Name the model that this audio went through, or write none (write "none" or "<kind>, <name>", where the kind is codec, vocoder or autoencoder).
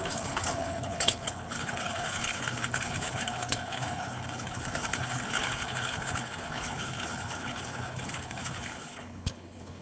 codec, HILCodec